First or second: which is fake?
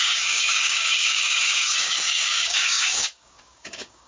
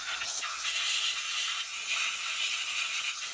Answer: first